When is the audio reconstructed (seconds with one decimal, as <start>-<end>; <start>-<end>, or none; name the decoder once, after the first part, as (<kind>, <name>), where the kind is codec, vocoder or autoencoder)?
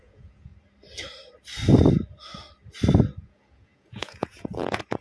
0.0-0.5 (vocoder, Vocos); 3.2-5.0